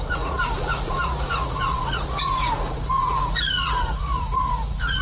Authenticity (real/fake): fake